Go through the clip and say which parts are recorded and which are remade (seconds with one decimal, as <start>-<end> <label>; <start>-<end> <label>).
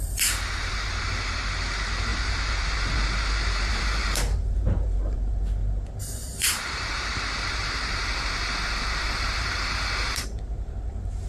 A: 0.0-5.6 remade; 5.6-6.7 recorded; 6.7-11.3 remade